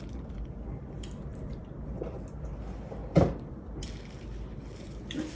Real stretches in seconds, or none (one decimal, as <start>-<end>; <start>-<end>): 0.0-5.3

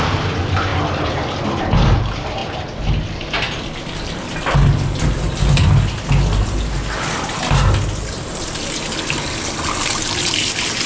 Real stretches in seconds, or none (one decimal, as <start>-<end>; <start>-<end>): 0.0-10.9

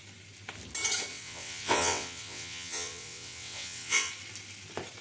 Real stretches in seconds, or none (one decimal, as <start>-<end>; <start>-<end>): 0.0-1.1; 4.1-5.0